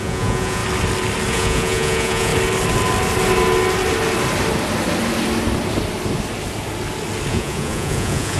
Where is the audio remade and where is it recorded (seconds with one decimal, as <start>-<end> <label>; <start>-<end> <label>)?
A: 0.0-0.6 remade; 0.6-1.3 recorded; 1.3-2.3 remade; 2.3-7.3 recorded; 7.3-8.4 remade